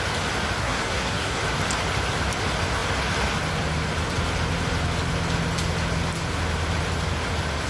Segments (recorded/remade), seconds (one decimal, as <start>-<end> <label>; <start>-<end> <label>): 0.0-0.6 recorded; 0.6-1.4 remade; 1.4-7.7 recorded